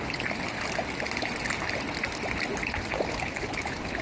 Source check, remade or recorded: recorded